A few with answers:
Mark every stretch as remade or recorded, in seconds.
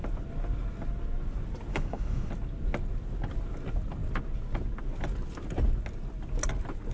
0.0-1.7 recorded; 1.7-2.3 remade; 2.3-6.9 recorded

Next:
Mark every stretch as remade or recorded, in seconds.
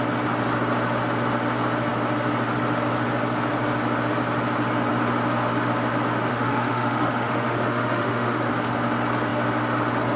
0.0-6.3 recorded; 6.3-8.5 remade; 8.5-10.2 recorded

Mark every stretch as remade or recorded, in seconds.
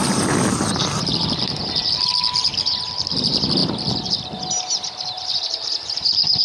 0.0-6.4 recorded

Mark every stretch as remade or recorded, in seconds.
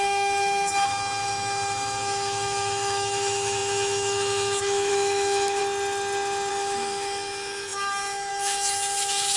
0.0-5.6 remade; 5.6-6.5 recorded; 6.5-9.4 remade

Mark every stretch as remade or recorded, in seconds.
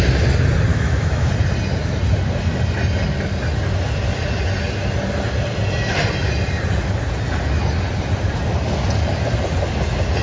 0.0-0.7 recorded; 0.7-1.3 remade; 1.3-10.2 recorded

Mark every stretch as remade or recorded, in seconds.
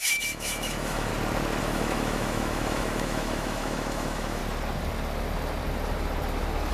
0.0-1.1 remade; 1.1-1.6 recorded; 1.6-4.4 remade; 4.4-6.7 recorded